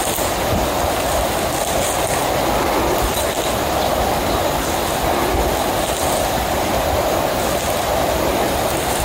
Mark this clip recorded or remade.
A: recorded